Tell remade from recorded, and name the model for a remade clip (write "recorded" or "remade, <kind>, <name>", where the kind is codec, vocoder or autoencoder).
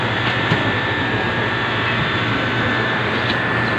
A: remade, vocoder, BigVGAN v2